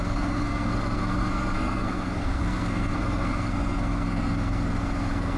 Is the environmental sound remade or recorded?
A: remade